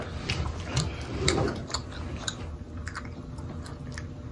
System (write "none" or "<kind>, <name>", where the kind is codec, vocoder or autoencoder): none